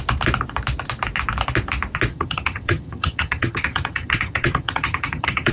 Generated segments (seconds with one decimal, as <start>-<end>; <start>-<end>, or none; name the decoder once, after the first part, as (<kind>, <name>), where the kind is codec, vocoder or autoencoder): 2.1-5.5 (vocoder, HiFi-GAN)